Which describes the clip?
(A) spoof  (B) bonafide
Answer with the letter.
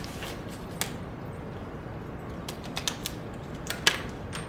B